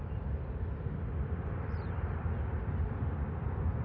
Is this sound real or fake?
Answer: real